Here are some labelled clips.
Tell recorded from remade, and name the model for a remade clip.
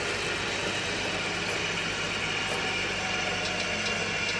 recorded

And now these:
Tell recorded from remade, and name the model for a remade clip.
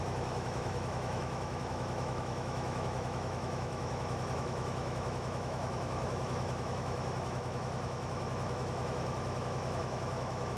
remade, autoencoder, DAC-VAE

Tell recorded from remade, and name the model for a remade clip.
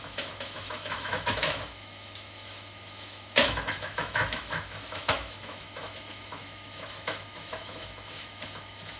remade, autoencoder, DAC-VAE